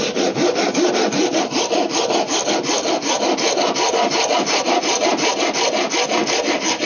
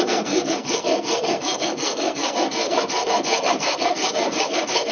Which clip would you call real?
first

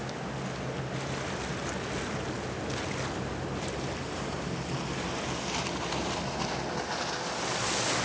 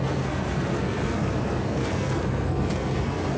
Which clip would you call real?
first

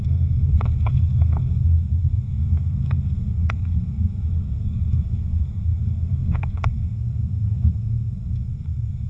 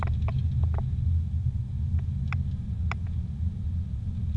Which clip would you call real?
second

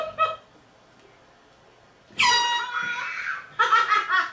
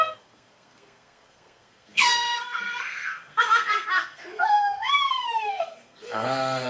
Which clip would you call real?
first